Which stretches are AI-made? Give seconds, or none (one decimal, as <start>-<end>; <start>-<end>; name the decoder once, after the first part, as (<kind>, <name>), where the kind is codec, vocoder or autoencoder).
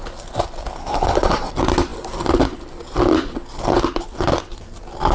0.8-1.5 (codec, SNAC)